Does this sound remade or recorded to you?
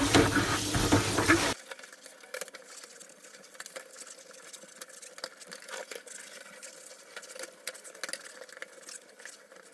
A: recorded